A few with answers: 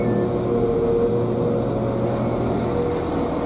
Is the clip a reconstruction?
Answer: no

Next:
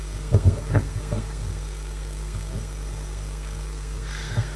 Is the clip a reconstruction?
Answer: yes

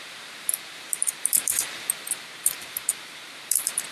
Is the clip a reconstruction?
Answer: yes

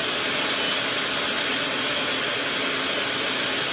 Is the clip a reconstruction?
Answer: no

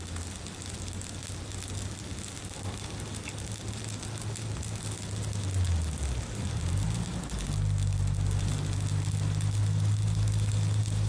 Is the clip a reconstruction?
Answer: no